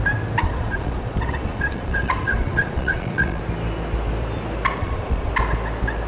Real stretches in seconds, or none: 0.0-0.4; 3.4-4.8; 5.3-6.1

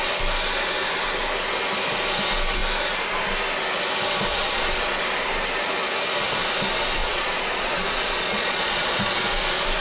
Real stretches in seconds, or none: 0.0-4.3; 4.9-7.0; 9.0-9.8